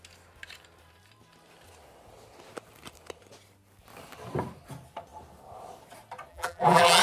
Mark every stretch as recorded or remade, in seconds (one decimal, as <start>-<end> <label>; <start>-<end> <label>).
0.0-6.3 recorded; 6.3-7.0 remade